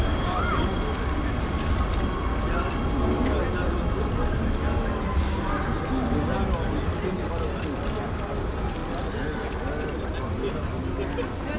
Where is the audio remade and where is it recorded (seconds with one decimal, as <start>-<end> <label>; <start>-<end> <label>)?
0.0-11.6 recorded